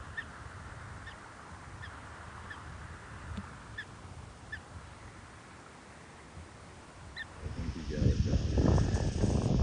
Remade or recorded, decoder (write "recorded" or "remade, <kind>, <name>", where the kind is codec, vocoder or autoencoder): recorded